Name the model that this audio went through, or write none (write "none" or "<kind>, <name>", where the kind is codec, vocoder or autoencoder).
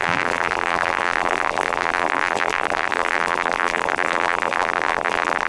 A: vocoder, BigVGAN v2